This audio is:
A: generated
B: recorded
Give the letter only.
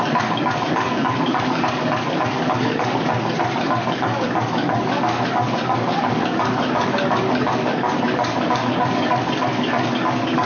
A